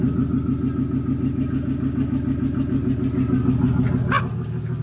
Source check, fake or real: real